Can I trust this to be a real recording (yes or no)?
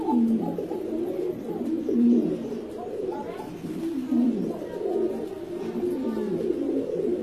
yes